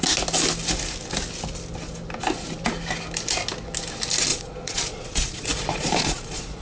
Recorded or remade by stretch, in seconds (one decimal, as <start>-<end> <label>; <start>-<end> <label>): 0.0-4.3 recorded; 4.3-6.6 remade